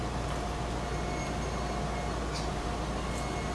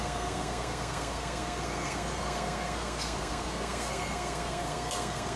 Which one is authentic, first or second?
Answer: first